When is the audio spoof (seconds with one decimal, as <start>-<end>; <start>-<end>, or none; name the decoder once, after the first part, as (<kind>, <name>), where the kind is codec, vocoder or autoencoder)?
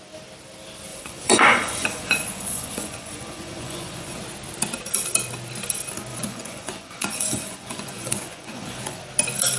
0.9-4.2 (vocoder, Vocos); 6.1-9.0